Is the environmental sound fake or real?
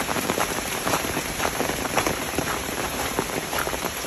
fake